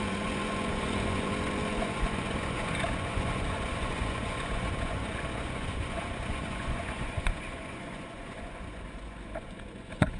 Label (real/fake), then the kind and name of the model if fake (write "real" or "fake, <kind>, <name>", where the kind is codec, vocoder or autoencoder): fake, vocoder, Vocos